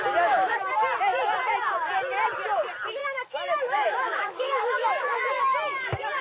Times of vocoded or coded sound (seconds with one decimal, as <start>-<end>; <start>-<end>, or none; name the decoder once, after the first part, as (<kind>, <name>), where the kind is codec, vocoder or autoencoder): 3.0-5.4 (autoencoder, DAC-VAE)

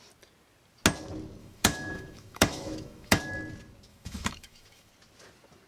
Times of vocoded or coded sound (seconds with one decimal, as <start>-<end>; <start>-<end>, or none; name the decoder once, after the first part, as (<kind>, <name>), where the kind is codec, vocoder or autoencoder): 1.4-3.2 (autoencoder, DAC-VAE); 3.9-4.9

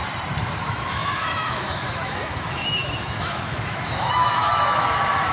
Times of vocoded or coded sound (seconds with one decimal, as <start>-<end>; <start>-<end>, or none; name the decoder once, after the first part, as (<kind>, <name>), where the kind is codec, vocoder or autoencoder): 0.6-5.3 (autoencoder, DAC-VAE)

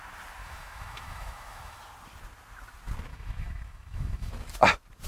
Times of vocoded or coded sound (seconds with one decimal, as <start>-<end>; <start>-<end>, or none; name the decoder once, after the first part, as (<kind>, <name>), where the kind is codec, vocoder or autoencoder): 0.4-1.8 (autoencoder, DAC-VAE); 3.1-4.3